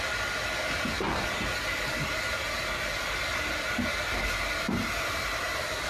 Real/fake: real